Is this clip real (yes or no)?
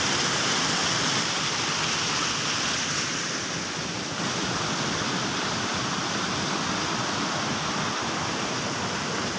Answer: yes